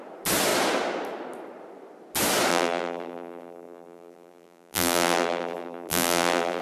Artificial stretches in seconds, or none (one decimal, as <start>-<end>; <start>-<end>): 2.5-6.6